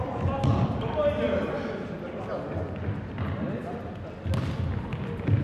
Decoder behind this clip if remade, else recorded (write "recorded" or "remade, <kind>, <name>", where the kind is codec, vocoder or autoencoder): recorded